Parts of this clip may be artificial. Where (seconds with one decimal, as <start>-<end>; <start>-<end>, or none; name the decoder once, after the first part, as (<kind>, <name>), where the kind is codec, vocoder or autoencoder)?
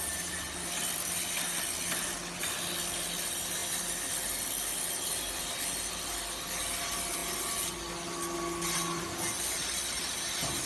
none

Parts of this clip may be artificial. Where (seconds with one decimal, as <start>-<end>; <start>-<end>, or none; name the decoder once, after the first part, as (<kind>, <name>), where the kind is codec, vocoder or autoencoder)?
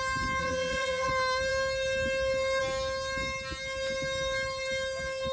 0.4-1.1 (vocoder, WaveNeXt)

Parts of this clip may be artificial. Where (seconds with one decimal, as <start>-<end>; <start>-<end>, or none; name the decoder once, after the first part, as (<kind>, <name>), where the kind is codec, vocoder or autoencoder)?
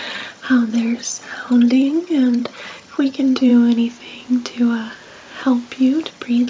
0.0-3.5 (vocoder, HiFi-GAN); 6.1-6.5